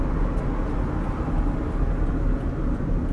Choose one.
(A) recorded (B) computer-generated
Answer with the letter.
A